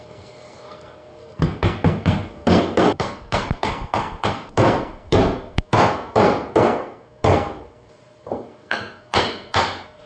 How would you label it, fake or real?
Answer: fake